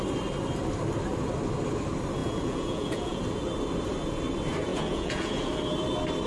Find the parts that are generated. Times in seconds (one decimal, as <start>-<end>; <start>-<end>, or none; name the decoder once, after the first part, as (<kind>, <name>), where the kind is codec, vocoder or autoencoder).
2.2-3.2 (vocoder, Vocos); 4.7-5.5